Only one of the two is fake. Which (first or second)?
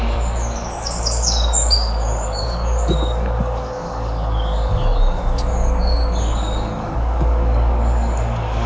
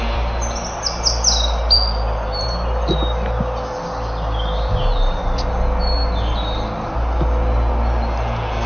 first